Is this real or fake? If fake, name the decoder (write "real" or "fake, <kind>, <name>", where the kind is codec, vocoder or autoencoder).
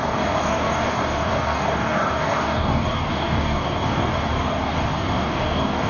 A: fake, codec, DAC